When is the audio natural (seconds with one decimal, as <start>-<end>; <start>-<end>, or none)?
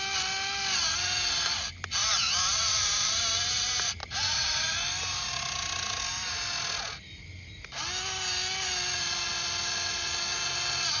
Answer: 0.0-2.0; 3.2-4.0; 4.6-11.0